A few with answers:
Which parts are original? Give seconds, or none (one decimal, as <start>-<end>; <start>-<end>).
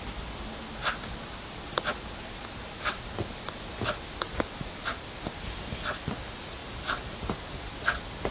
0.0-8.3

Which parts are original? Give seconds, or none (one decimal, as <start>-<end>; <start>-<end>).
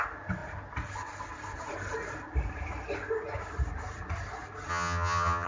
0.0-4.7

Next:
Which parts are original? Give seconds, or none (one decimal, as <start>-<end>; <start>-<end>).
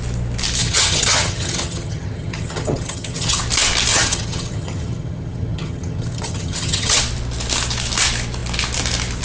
0.0-0.6; 3.4-3.9; 7.0-9.2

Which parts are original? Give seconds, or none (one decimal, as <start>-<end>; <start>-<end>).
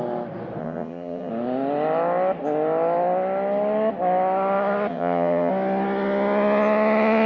0.0-0.6; 1.3-4.9; 5.5-7.3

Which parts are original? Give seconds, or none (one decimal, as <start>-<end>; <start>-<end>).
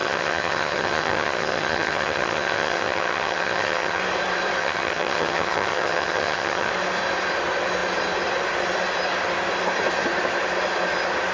4.0-4.6; 6.7-11.3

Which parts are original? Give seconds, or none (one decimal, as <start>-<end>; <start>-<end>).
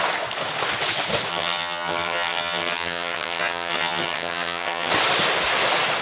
0.0-1.3; 4.9-6.0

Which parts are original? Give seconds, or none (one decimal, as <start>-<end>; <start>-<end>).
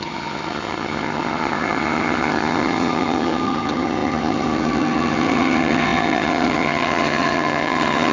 none